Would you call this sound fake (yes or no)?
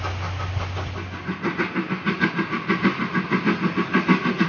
no